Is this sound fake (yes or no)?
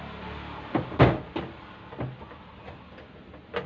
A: no